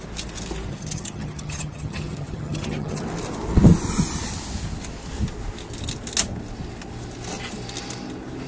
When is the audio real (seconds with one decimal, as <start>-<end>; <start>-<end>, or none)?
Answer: 0.0-0.7; 3.0-8.5